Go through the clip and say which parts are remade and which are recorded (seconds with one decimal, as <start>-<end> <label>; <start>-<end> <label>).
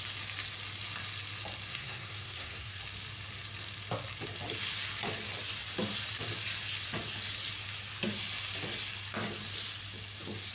0.0-1.7 recorded; 1.7-2.8 remade; 2.8-10.5 recorded